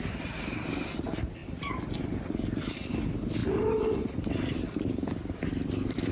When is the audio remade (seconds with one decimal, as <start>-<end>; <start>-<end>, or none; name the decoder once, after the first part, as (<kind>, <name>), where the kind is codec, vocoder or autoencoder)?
none